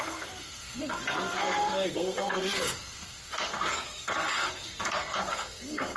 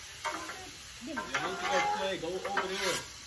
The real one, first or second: second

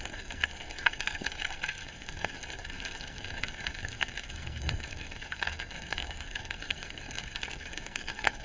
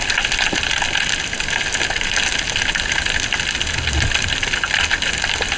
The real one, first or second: second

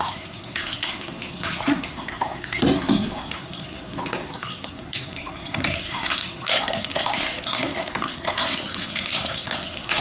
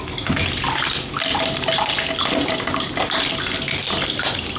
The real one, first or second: second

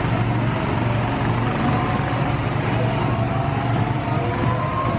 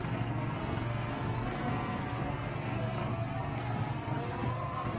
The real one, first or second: first